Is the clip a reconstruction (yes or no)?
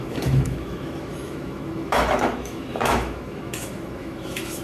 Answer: yes